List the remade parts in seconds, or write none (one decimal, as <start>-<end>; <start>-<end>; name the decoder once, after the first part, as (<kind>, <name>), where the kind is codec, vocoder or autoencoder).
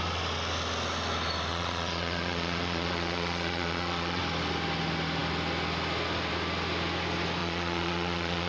1.5-4.2 (vocoder, Vocos); 7.4-8.5